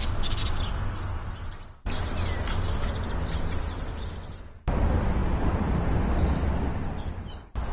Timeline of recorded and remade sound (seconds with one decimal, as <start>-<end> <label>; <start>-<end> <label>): 0.0-7.7 recorded